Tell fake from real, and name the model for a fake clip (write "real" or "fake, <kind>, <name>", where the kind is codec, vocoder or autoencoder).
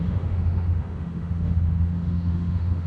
fake, autoencoder, DAC-VAE